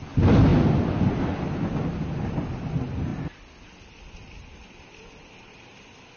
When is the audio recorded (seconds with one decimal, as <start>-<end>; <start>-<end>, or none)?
0.0-6.2